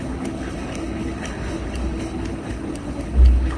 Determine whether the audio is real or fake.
fake